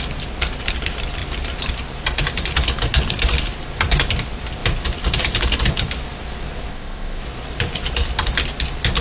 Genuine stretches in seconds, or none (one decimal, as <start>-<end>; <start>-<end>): 0.0-6.7; 7.2-9.0